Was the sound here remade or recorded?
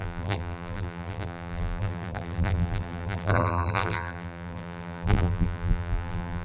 remade